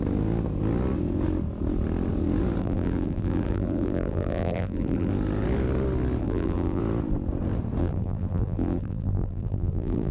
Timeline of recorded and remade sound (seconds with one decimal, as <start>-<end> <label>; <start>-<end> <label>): 0.0-2.6 recorded; 2.6-5.1 remade; 5.1-6.2 recorded; 6.2-6.8 remade; 6.8-7.8 recorded; 7.8-10.1 remade